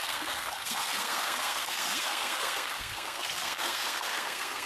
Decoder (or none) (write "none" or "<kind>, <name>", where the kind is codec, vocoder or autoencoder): codec, SNAC